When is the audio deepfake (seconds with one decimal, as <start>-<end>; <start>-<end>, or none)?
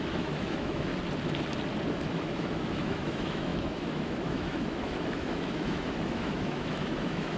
0.0-0.9; 2.2-7.4